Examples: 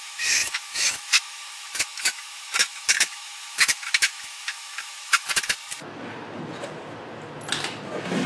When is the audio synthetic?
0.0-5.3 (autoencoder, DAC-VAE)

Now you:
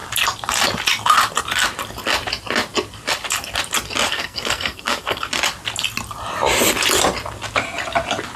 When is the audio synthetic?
4.1-5.3 (codec, SNAC)